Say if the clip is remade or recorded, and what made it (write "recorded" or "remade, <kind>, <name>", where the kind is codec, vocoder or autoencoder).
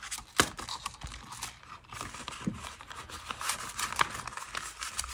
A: recorded